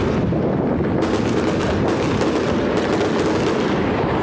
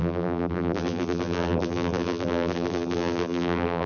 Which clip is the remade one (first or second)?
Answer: second